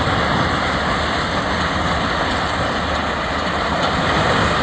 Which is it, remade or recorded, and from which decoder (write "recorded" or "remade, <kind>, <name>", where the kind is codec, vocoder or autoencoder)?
recorded